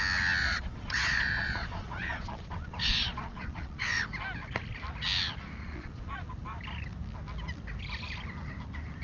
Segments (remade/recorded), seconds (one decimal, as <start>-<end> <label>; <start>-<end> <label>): 0.0-0.4 recorded; 0.4-4.0 remade; 4.0-5.6 recorded; 5.6-6.3 remade; 6.3-9.0 recorded

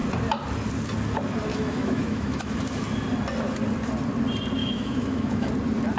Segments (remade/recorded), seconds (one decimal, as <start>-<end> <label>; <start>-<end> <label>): 0.0-1.5 recorded; 1.5-2.6 remade; 2.6-4.6 recorded; 4.6-5.5 remade; 5.5-6.0 recorded

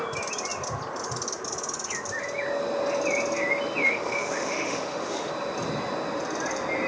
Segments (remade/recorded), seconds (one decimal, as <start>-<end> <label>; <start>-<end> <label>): 0.0-3.8 recorded; 3.8-5.3 remade; 5.3-6.9 recorded

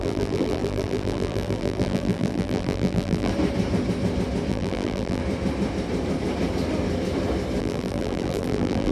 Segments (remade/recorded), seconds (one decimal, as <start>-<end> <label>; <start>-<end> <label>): 0.0-3.3 remade; 3.3-4.5 recorded; 4.5-5.2 remade; 5.2-7.6 recorded; 7.6-8.9 remade